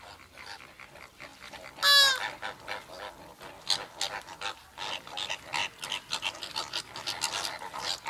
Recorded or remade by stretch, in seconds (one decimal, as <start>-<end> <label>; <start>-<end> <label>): 0.0-8.1 recorded